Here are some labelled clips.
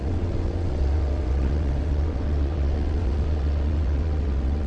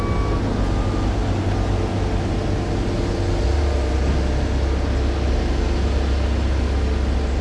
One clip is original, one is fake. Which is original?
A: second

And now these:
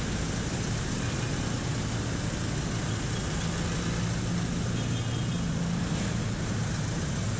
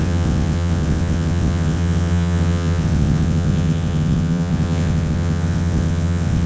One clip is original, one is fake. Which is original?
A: first